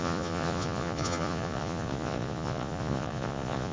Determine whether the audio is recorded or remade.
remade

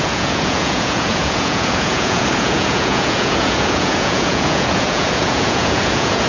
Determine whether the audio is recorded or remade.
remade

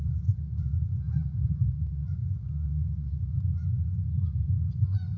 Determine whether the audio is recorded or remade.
remade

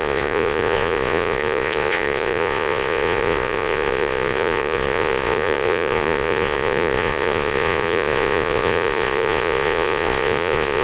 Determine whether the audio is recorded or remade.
remade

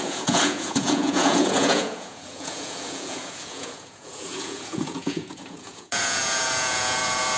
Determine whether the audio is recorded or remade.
remade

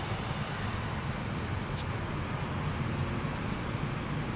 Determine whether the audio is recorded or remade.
recorded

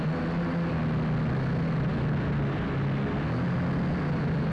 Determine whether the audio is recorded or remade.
recorded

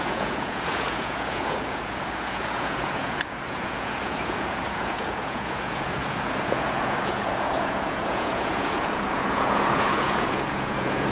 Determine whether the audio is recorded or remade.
remade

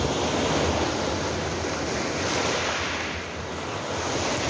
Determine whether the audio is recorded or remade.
recorded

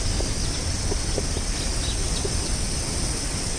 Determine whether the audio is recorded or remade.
recorded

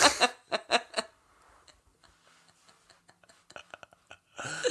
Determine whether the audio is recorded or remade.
recorded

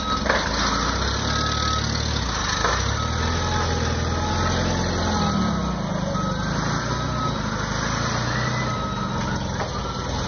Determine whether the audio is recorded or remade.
recorded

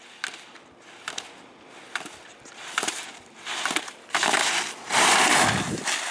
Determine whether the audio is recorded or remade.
recorded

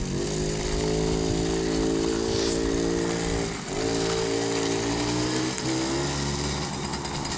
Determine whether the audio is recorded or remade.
recorded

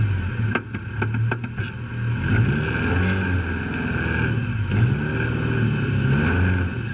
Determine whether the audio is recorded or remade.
recorded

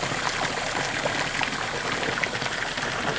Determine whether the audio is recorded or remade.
recorded